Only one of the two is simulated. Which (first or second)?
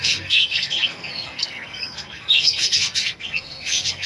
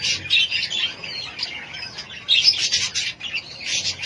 first